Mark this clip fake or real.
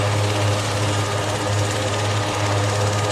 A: real